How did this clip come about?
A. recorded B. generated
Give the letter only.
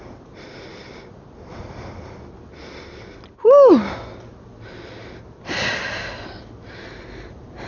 A